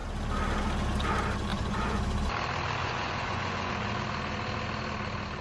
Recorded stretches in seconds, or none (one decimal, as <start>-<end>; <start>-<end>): 0.0-1.5; 2.0-2.8; 3.7-5.4